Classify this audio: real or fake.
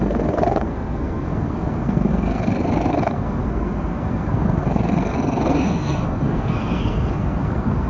fake